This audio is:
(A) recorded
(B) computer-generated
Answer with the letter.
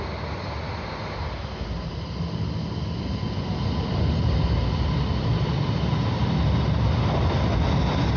A